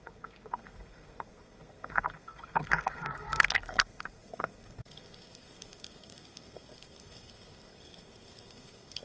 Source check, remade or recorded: remade